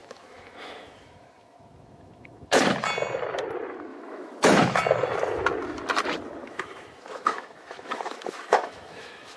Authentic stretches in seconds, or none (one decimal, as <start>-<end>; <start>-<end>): 2.6-3.9; 4.8-6.4